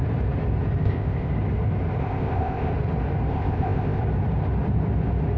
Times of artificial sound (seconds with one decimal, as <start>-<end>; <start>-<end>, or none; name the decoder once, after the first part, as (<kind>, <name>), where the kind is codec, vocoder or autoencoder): 0.8-1.3 (codec, ZipCodec); 2.0-2.7; 3.3-4.0